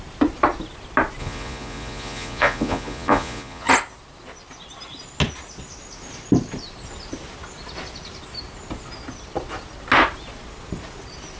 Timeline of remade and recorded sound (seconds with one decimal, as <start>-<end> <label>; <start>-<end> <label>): 0.0-1.2 recorded; 1.2-3.7 remade; 3.7-11.4 recorded